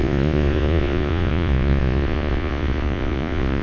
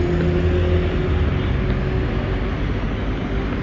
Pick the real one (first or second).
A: second